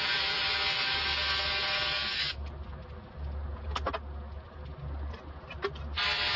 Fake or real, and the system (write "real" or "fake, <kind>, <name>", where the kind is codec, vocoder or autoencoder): real